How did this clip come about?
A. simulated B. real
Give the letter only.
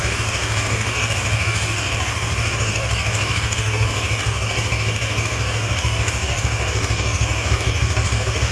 A